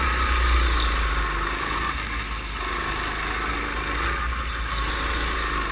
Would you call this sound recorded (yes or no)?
yes